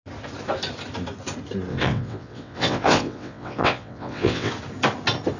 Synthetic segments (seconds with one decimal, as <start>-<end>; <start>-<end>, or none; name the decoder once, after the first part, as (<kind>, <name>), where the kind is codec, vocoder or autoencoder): 1.7-4.5 (vocoder, WaveNeXt)